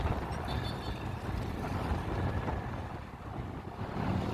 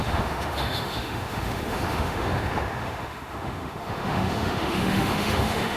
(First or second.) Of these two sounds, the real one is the first